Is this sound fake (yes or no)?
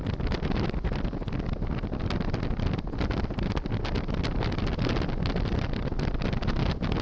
no